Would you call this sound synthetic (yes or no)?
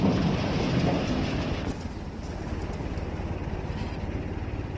no